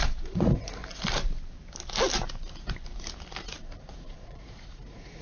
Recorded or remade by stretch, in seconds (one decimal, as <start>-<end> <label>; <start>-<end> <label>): 0.0-0.8 remade; 0.8-3.5 recorded; 3.5-5.2 remade